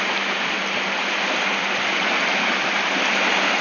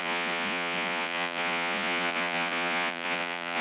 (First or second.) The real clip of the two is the first